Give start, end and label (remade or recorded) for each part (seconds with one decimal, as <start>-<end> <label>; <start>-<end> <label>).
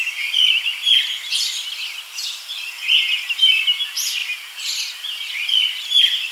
0.0-6.3 recorded